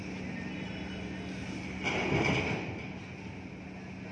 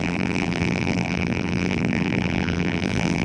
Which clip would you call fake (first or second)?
second